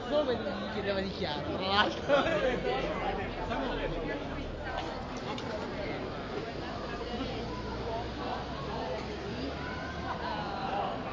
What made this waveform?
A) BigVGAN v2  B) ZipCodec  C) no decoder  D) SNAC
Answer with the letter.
C